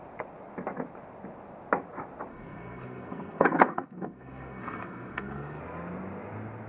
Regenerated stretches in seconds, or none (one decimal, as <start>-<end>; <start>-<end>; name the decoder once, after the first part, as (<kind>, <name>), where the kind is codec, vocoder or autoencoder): 2.3-5.6 (codec, SNAC)